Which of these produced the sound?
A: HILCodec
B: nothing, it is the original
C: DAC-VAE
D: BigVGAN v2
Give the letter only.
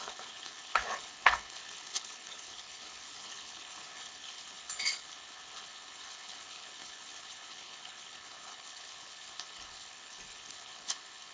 A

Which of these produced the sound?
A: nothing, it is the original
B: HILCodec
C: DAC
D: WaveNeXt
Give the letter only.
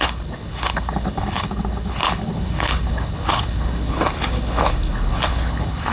B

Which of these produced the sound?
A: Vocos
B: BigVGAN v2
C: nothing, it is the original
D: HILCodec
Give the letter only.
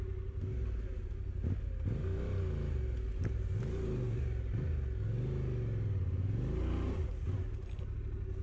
C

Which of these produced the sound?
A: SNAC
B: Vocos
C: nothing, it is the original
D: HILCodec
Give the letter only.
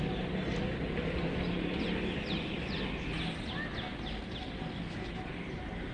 C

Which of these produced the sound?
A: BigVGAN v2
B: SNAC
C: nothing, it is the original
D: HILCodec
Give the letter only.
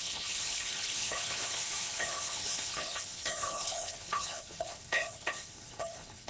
D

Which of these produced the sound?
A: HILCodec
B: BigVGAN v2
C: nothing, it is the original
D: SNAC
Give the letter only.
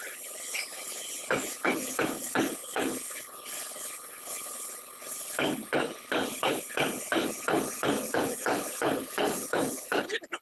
A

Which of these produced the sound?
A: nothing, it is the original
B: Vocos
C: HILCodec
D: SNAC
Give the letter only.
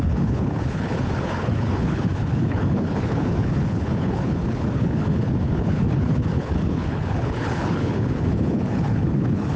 C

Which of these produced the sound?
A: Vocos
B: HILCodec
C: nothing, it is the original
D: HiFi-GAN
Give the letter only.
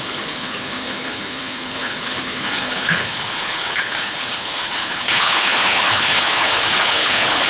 B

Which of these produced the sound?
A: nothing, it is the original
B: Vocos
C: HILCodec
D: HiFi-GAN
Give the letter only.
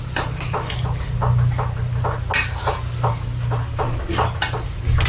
A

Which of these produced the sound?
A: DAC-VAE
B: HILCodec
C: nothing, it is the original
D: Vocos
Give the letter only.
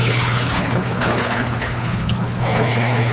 B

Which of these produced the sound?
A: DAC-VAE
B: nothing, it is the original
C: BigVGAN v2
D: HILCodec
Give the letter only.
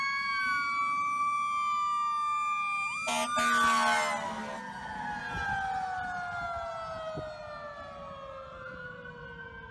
B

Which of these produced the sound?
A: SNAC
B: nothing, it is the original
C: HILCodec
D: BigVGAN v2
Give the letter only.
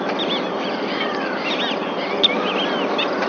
B